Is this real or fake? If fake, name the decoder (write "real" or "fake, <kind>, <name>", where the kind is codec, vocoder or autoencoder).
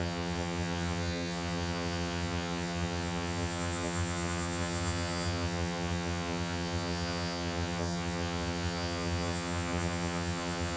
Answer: fake, vocoder, HiFi-GAN